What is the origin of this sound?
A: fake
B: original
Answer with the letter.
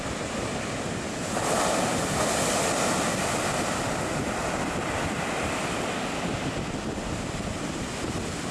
B